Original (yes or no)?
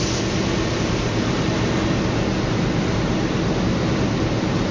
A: yes